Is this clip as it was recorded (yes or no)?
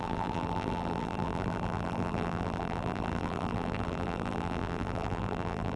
no